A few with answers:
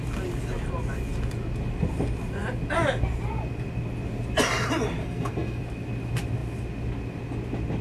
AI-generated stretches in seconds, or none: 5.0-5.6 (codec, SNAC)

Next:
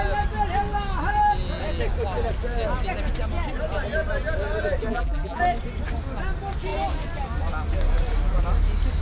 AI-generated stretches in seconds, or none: 4.9-5.4 (vocoder, BigVGAN v2)